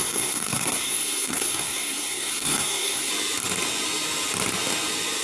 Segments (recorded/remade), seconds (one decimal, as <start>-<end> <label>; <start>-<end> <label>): 0.0-3.1 remade; 3.1-5.2 recorded